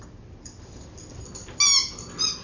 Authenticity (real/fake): real